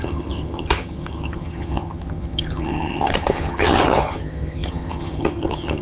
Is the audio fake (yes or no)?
yes